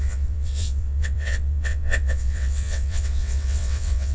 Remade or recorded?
remade